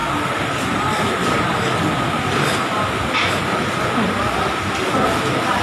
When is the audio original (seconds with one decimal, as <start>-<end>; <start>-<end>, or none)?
0.0-5.6